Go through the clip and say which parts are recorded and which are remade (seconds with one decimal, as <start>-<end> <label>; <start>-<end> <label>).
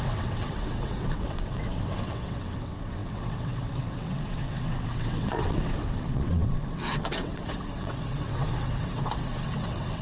0.0-10.0 remade